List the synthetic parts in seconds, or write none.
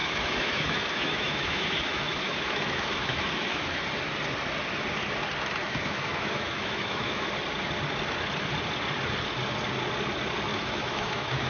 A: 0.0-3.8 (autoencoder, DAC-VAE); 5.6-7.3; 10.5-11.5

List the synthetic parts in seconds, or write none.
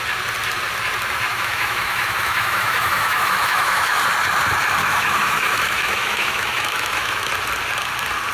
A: 1.3-4.0 (autoencoder, DAC-VAE); 4.8-7.3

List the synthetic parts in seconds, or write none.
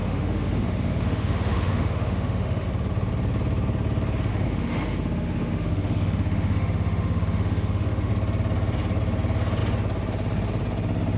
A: 0.0-2.7 (autoencoder, DAC-VAE); 4.3-8.1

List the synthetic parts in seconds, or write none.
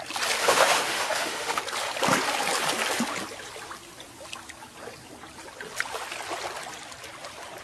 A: 0.4-1.6 (autoencoder, DAC-VAE)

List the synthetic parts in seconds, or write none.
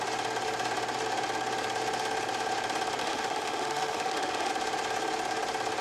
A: 3.0-4.5 (autoencoder, DAC-VAE)